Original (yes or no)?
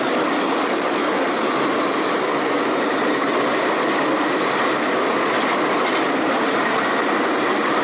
yes